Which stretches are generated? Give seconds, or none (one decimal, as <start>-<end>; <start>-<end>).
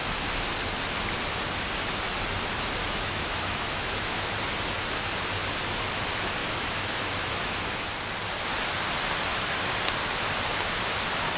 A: 2.8-4.4; 6.4-7.9